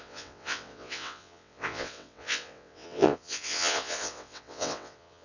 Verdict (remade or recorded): remade